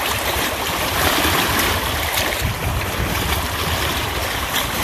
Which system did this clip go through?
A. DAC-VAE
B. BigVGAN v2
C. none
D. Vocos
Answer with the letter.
B